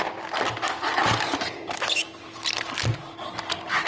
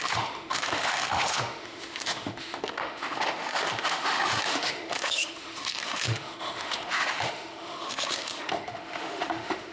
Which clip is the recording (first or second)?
first